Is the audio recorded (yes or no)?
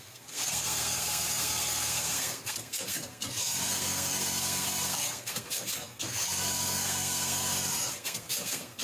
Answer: no